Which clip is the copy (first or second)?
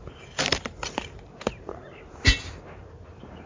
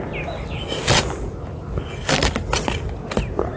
first